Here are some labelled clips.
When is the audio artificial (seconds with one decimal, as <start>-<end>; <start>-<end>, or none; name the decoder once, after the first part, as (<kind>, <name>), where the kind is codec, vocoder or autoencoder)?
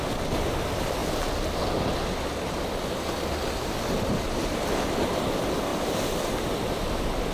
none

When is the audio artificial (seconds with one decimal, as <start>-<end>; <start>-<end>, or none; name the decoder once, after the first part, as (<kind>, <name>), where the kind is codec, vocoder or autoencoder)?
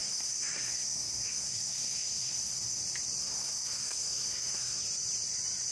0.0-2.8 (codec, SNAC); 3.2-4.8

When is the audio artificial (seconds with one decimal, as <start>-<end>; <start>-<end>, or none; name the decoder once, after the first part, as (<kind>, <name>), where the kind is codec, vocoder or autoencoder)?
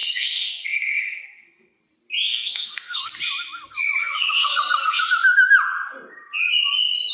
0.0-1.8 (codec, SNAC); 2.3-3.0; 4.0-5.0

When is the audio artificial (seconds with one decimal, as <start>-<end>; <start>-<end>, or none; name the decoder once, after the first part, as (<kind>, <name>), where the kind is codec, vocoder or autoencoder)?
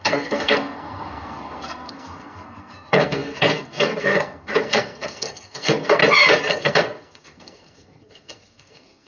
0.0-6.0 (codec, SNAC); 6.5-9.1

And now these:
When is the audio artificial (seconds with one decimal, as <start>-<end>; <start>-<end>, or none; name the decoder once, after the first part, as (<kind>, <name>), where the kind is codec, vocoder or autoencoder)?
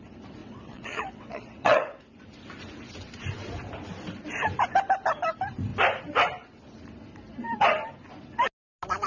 0.4-2.0 (vocoder, WaveNeXt)